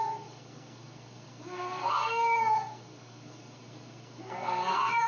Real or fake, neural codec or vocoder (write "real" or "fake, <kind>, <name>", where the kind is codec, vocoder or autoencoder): fake, codec, SNAC